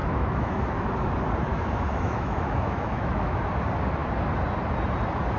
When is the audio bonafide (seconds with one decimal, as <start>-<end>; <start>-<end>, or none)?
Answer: 1.1-1.5; 3.4-5.4